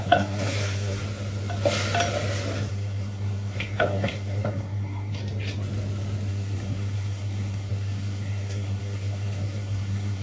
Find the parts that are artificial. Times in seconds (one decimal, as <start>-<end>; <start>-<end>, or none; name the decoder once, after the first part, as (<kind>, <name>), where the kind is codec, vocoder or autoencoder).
0.0-1.0 (codec, SNAC); 2.7-5.2; 6.3-10.2